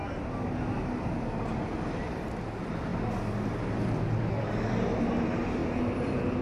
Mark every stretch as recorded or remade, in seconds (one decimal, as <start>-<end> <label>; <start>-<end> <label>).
0.0-5.6 recorded; 5.6-6.4 remade